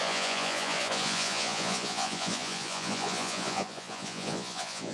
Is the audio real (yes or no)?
no